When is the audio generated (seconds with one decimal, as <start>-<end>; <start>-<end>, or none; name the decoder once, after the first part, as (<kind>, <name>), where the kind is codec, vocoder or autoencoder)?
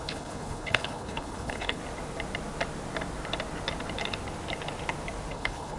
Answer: 0.0-1.8 (codec, HILCodec); 5.3-5.8